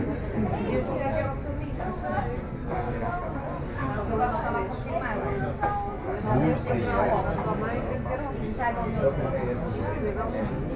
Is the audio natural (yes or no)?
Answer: yes